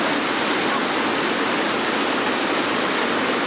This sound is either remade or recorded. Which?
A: recorded